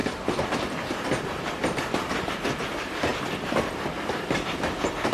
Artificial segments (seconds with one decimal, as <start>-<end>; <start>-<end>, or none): 0.0-2.3